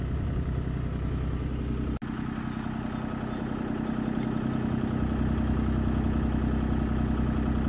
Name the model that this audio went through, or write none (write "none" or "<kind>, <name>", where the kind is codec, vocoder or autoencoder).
none